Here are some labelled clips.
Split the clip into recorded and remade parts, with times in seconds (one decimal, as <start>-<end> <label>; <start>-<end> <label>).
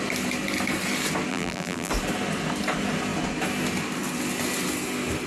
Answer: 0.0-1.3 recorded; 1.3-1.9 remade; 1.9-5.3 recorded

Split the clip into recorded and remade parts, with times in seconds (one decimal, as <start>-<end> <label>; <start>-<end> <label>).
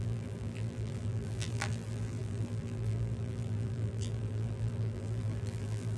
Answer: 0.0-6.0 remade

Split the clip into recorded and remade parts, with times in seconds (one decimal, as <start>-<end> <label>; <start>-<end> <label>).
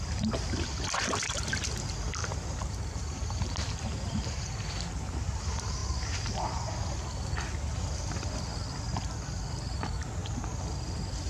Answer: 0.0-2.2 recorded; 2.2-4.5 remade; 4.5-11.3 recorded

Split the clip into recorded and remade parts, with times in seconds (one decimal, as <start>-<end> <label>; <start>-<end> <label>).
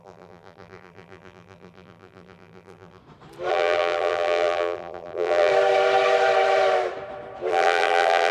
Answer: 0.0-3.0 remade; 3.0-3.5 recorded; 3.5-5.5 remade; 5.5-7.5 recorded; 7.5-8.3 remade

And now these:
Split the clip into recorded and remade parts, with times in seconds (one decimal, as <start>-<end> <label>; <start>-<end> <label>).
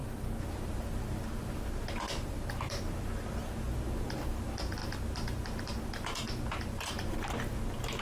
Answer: 0.0-8.0 recorded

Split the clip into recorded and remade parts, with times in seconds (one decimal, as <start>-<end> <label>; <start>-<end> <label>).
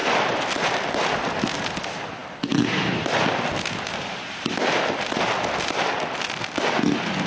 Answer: 0.0-0.9 remade; 0.9-2.2 recorded; 2.2-6.6 remade; 6.6-7.3 recorded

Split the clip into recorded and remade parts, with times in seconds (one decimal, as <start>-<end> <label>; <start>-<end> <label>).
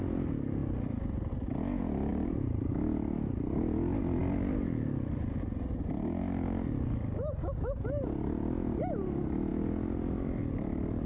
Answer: 0.0-2.1 recorded; 2.1-2.7 remade; 2.7-11.1 recorded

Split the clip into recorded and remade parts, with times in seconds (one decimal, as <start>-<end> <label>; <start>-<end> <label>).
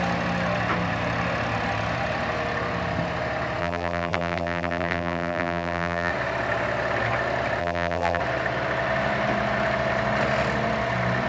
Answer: 0.0-3.6 recorded; 3.6-6.1 remade; 6.1-7.6 recorded; 7.6-8.2 remade; 8.2-11.3 recorded